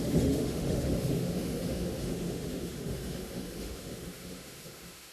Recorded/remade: remade